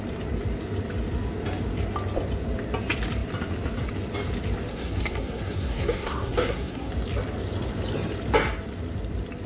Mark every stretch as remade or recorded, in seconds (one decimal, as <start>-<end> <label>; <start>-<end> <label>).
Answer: 0.0-4.7 recorded; 4.7-6.9 remade; 6.9-9.5 recorded